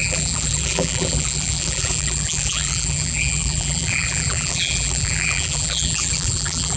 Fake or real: fake